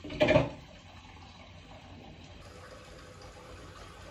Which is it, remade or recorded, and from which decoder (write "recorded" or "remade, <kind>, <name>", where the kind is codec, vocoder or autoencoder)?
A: recorded